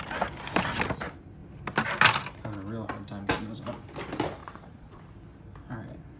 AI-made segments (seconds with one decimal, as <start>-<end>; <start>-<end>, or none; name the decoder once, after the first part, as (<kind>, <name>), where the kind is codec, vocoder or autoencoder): 4.4-5.0 (vocoder, Vocos)